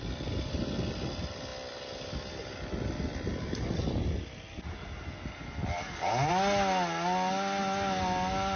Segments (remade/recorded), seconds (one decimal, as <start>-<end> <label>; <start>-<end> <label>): 0.0-8.6 recorded